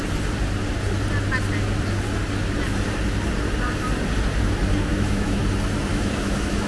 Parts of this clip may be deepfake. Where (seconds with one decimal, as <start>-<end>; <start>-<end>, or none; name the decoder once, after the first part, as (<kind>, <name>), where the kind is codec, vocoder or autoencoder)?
4.9-5.4 (autoencoder, DAC-VAE); 5.9-6.7